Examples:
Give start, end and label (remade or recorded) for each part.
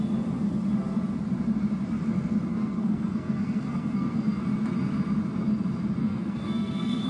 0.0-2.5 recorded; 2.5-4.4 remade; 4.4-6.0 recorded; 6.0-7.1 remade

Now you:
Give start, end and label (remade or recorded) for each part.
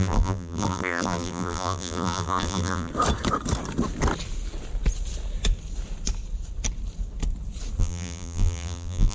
0.0-2.9 remade; 2.9-7.8 recorded; 7.8-9.1 remade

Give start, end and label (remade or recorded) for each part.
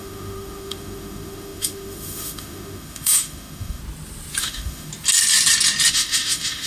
0.0-3.8 remade; 3.8-4.4 recorded; 4.4-4.9 remade; 4.9-5.9 recorded; 5.9-6.7 remade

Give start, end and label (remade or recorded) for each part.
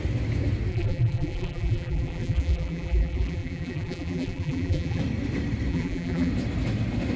0.0-0.7 recorded; 0.7-5.0 remade; 5.0-5.7 recorded; 5.7-6.3 remade; 6.3-7.2 recorded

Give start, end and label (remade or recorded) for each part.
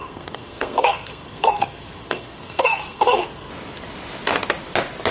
0.0-3.5 remade; 3.5-5.1 recorded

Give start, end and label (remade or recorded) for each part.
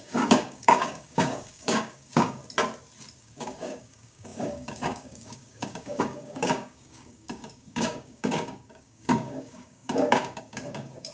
0.0-2.4 remade; 2.4-3.2 recorded; 3.2-11.1 remade